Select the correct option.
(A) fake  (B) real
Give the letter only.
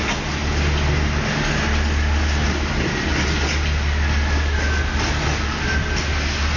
B